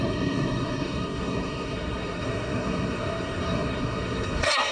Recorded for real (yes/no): no